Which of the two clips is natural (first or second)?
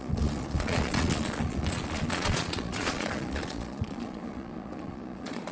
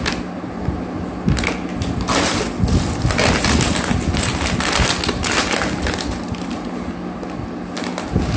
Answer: second